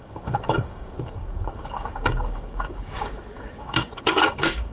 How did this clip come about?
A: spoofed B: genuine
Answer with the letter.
A